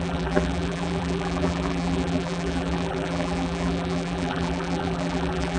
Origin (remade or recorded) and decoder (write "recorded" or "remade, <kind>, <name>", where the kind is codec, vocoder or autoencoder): remade, vocoder, BigVGAN v2